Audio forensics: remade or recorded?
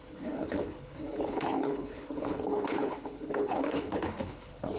remade